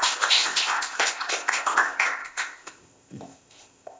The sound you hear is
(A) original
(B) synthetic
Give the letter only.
B